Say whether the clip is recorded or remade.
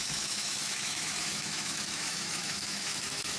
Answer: remade